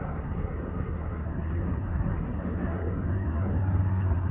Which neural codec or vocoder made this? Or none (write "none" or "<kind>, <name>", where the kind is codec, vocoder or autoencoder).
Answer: codec, SNAC